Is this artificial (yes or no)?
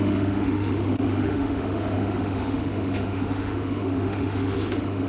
yes